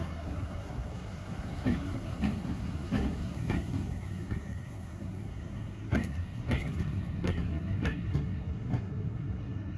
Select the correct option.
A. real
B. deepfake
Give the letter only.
B